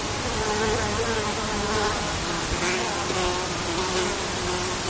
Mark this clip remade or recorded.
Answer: recorded